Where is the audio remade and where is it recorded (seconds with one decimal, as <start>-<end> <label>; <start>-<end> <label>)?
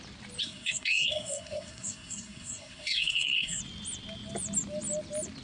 0.0-0.4 recorded; 0.4-3.6 remade; 3.6-5.4 recorded